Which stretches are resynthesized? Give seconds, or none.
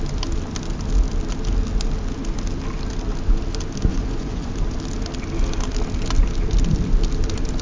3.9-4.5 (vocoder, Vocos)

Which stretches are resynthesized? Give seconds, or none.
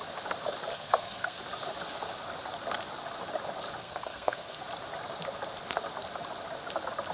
0.7-1.4 (codec, SNAC); 3.8-4.6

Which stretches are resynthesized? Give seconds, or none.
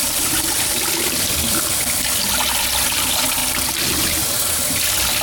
0.0-2.2 (vocoder, BigVGAN v2); 3.4-3.9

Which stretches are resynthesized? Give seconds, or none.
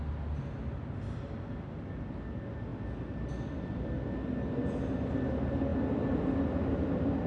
none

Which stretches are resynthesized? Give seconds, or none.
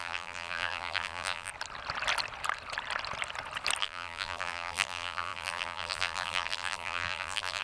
0.0-1.5 (vocoder, BigVGAN v2); 3.8-7.6